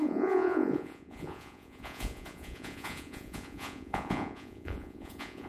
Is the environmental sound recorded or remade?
remade